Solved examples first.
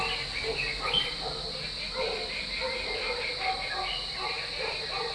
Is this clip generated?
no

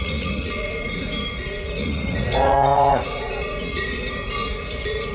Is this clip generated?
yes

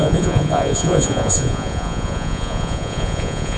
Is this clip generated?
yes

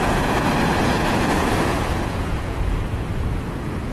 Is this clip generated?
yes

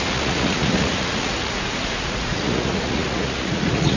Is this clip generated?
yes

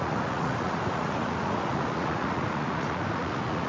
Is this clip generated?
yes